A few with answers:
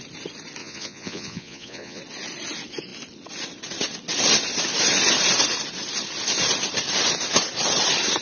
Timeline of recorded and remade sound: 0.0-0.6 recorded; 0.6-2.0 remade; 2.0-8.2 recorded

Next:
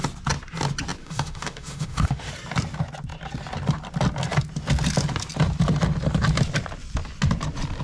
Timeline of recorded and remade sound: 0.0-1.0 recorded; 1.0-2.3 remade; 2.3-7.8 recorded

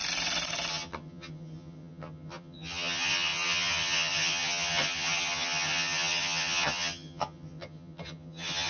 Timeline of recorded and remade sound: 0.0-0.7 recorded; 0.7-8.7 remade

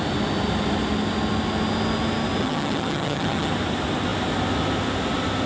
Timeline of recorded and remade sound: 0.0-2.4 recorded; 2.4-3.5 remade; 3.5-5.5 recorded

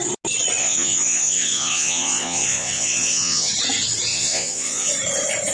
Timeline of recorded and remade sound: 0.0-0.6 recorded; 0.6-3.5 remade; 3.5-4.1 recorded; 4.1-4.9 remade; 4.9-5.5 recorded

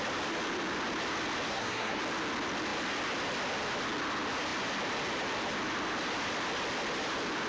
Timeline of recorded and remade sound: 0.0-1.5 recorded; 1.5-2.0 remade; 2.0-7.5 recorded

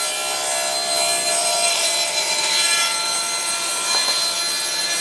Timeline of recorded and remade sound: 0.0-1.4 recorded; 1.4-4.4 remade; 4.4-5.0 recorded

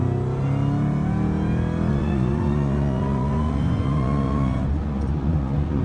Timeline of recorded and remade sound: 0.0-1.9 recorded; 1.9-5.8 remade